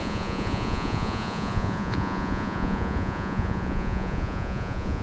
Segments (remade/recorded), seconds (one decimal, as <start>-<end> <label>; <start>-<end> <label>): 0.0-5.0 remade